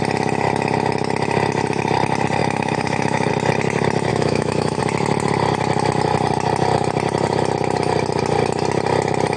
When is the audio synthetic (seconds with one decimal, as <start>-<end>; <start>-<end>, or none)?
2.4-3.3; 4.1-4.8